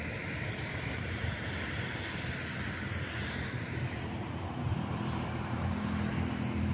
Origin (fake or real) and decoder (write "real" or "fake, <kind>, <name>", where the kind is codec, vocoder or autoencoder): real